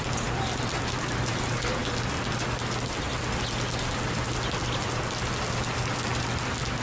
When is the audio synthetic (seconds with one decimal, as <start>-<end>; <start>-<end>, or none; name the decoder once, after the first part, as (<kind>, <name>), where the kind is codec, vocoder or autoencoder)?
none